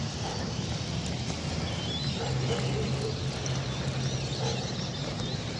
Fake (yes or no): no